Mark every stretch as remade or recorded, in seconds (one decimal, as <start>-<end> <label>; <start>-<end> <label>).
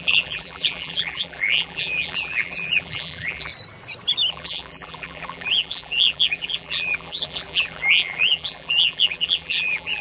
0.0-3.5 remade; 3.5-4.3 recorded; 4.3-10.0 remade